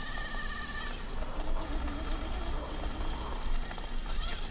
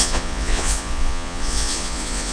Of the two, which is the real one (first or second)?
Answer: first